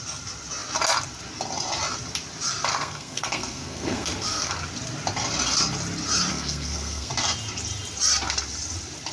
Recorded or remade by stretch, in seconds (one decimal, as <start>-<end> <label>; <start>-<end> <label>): 0.0-2.7 recorded; 2.7-4.5 remade; 4.5-6.3 recorded; 6.3-7.1 remade; 7.1-9.1 recorded